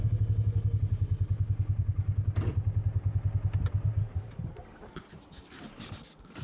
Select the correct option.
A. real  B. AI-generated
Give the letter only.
A